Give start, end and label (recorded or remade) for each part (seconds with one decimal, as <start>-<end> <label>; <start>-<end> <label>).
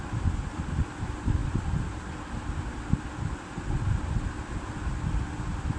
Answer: 0.0-5.8 recorded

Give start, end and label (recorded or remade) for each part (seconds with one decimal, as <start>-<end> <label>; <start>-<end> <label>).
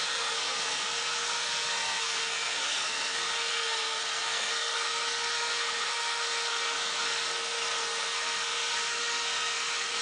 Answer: 0.0-10.0 remade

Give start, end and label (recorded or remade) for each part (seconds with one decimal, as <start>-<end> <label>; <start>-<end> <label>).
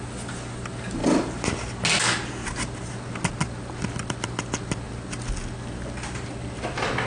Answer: 0.0-7.1 recorded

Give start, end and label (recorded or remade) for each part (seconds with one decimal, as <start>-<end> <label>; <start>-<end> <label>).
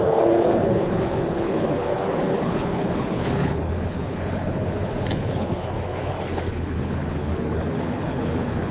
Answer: 0.0-8.7 remade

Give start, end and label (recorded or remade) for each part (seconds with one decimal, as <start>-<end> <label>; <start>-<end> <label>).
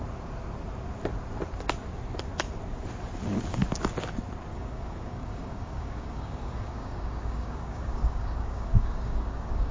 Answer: 0.0-4.5 recorded; 4.5-9.7 remade